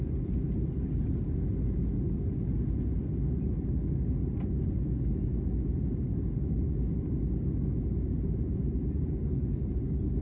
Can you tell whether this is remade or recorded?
recorded